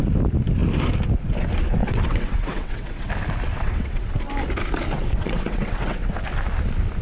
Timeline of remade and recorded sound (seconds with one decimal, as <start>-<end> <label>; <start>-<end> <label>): 0.0-1.8 recorded; 1.8-3.1 remade; 3.1-3.5 recorded; 3.5-4.1 remade; 4.1-5.0 recorded; 5.0-6.1 remade; 6.1-7.0 recorded